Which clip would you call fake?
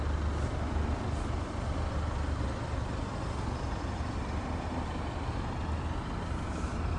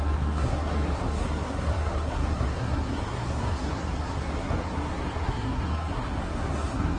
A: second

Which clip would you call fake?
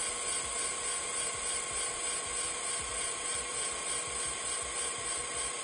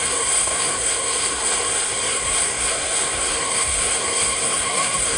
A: second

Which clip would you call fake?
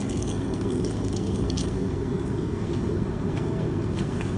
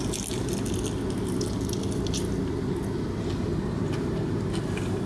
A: first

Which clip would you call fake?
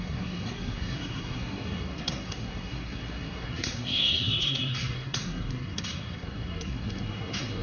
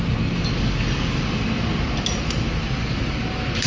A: first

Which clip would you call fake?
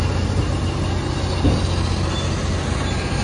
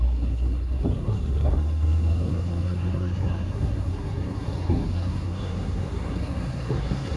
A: second